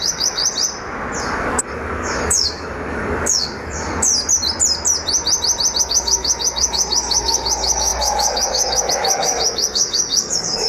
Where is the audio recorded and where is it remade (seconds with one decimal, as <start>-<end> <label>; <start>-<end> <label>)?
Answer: 0.0-0.4 remade; 0.4-1.2 recorded; 1.2-4.1 remade; 4.1-5.8 recorded; 5.8-10.7 remade